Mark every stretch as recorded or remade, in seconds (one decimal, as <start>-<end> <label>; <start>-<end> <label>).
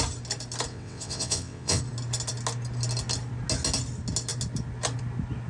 0.0-0.7 recorded; 0.7-1.8 remade; 1.8-5.5 recorded